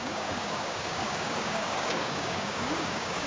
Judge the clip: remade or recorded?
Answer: remade